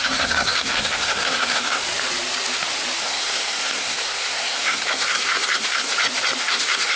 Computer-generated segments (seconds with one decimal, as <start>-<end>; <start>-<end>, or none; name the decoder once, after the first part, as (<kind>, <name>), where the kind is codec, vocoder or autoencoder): 0.0-1.8 (codec, SNAC); 3.0-5.9; 6.4-7.0